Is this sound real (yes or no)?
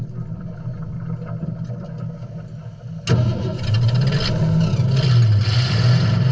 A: yes